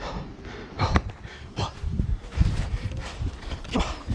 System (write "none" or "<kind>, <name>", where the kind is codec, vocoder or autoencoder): vocoder, BigVGAN v2